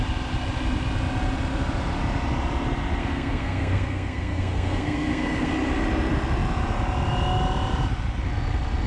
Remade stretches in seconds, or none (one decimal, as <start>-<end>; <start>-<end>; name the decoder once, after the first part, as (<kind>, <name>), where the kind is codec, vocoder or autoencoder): 3.0-5.5 (codec, SNAC)